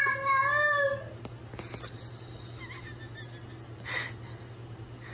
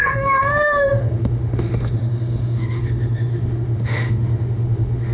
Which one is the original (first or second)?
first